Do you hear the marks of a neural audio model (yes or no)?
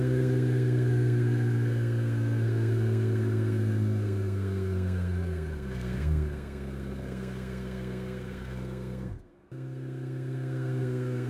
yes